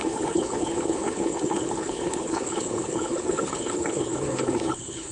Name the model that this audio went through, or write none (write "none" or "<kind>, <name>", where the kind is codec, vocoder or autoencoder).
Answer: codec, HILCodec